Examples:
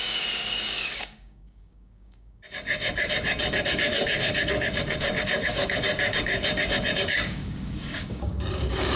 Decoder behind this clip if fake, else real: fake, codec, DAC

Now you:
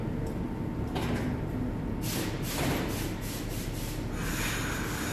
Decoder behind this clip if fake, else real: real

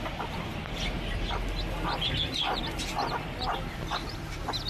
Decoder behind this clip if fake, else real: real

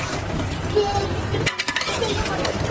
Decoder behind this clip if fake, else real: real